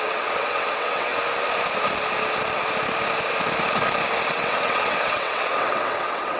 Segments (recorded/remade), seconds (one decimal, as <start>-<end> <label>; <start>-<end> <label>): 0.0-1.1 remade; 1.1-4.3 recorded; 4.3-6.4 remade